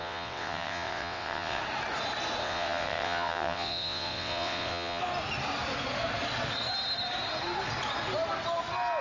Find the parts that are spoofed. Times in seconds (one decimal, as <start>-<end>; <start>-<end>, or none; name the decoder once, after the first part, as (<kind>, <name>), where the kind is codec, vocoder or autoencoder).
0.0-1.6 (vocoder, WaveNeXt); 2.4-5.0